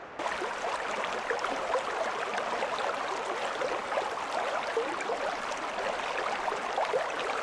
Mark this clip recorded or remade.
recorded